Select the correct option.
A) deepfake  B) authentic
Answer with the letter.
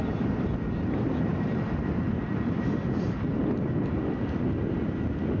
B